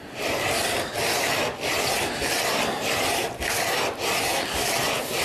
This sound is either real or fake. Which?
real